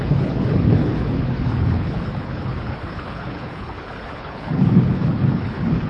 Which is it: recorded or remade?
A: remade